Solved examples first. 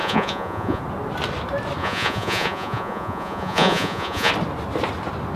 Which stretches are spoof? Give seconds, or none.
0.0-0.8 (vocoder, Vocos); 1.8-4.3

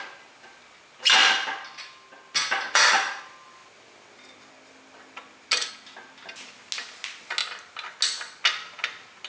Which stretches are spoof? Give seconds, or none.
none

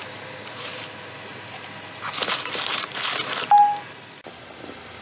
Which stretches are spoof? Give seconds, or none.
0.5-3.3 (vocoder, BigVGAN v2)